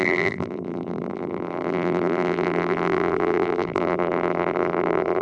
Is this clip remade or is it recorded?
remade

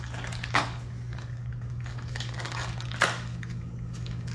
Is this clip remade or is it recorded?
remade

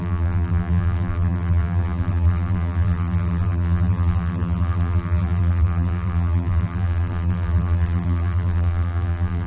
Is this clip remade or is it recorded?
remade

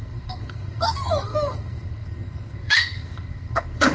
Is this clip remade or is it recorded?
remade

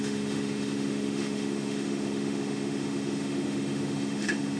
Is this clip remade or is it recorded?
remade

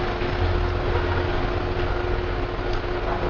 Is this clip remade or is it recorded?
recorded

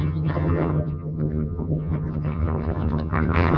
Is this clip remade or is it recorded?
remade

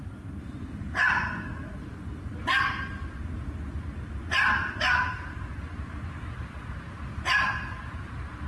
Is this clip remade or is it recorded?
recorded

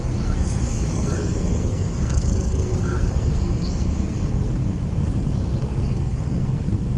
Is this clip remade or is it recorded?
remade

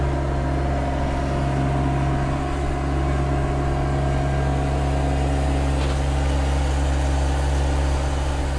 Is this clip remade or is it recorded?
recorded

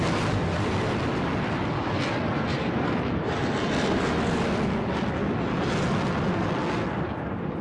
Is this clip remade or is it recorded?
recorded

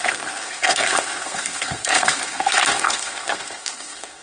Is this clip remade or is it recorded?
remade